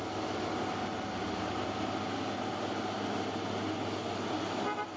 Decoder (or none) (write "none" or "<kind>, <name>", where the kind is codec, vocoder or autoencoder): none